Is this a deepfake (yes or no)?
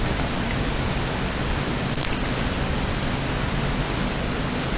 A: no